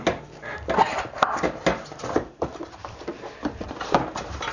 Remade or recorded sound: recorded